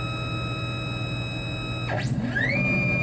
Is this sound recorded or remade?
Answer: recorded